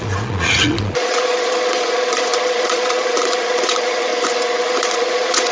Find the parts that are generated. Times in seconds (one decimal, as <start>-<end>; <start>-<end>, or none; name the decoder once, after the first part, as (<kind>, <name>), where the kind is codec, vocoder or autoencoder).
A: 0.0-4.1 (vocoder, Vocos); 4.6-5.5